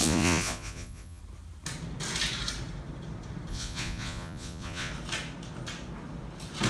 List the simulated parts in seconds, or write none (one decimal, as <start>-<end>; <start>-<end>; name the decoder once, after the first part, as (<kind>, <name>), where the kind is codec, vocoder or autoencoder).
0.0-1.2 (vocoder, Vocos); 3.5-4.9